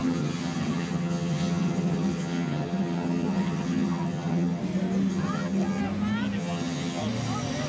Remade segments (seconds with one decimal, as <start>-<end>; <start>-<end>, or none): 0.0-4.6; 5.1-5.8; 6.4-7.0